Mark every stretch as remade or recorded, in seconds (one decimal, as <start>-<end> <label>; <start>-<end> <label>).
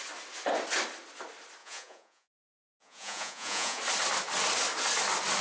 0.0-1.6 recorded; 1.6-3.8 remade; 3.8-5.4 recorded